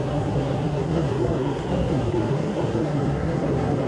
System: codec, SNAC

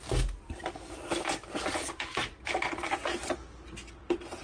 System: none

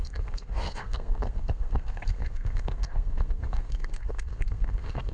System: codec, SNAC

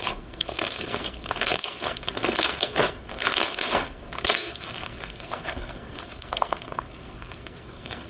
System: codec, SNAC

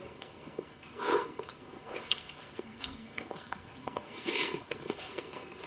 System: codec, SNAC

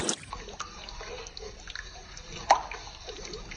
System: none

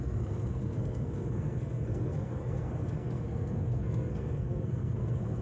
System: codec, SNAC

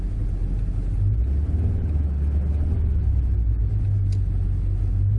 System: none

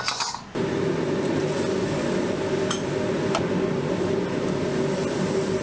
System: none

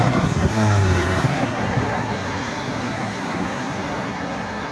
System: codec, SNAC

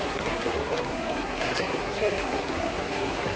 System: codec, SNAC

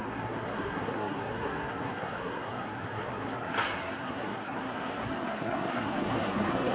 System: codec, SNAC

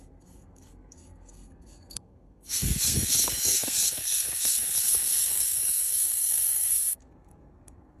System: codec, SNAC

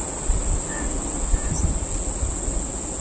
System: none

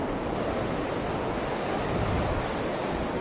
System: none